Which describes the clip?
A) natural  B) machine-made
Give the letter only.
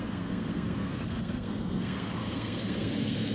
B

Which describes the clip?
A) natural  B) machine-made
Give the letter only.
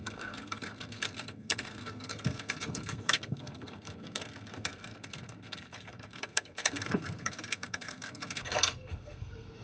B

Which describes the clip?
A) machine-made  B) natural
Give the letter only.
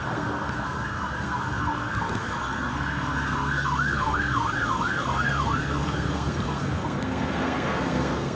A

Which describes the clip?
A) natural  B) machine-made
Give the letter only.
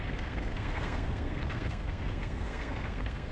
B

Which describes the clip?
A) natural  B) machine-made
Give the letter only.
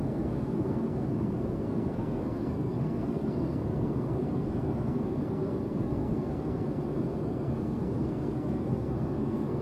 B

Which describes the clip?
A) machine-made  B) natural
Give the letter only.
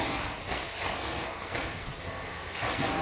A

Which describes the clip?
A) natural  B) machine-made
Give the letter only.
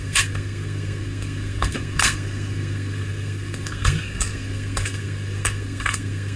B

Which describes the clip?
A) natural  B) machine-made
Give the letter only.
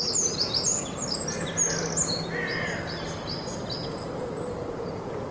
A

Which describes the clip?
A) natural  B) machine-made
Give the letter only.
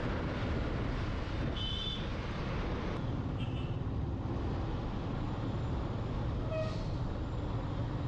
A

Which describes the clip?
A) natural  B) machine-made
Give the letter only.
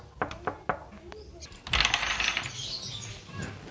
A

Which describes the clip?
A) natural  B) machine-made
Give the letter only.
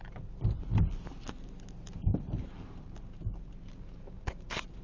A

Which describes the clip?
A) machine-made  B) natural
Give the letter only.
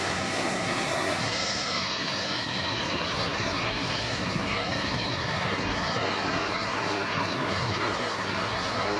A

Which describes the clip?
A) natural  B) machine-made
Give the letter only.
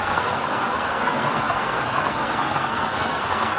B